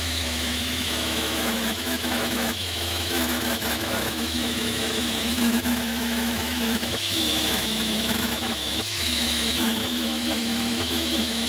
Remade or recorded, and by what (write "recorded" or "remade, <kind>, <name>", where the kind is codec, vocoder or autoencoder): remade, autoencoder, DAC-VAE